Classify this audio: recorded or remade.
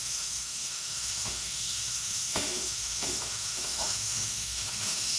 remade